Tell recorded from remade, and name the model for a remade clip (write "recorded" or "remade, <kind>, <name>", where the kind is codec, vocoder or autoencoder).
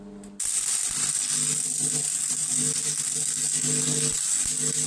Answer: recorded